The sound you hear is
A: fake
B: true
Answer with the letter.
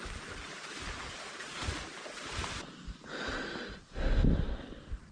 B